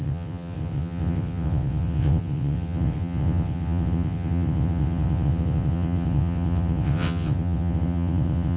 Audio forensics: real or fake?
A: fake